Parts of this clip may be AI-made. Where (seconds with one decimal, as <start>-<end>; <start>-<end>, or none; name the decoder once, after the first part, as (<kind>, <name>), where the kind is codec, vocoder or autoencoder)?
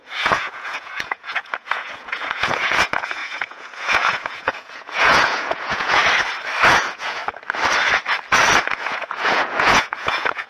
0.0-6.0 (vocoder, Vocos); 6.7-7.2; 8.8-10.5